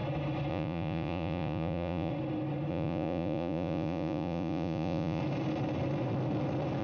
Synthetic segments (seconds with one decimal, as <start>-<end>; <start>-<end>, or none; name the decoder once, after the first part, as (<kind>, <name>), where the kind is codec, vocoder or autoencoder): 0.5-2.1 (vocoder, Vocos); 2.7-5.2